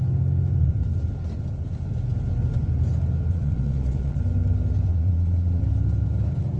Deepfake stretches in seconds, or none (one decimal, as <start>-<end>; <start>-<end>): 3.3-4.2; 4.9-5.6